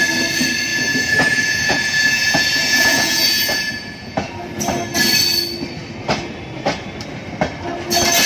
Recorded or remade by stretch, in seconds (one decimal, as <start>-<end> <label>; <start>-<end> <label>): 0.0-0.7 recorded; 0.7-4.3 remade; 4.3-8.3 recorded